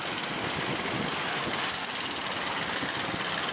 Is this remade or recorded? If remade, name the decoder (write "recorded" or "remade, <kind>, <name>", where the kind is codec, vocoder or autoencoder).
recorded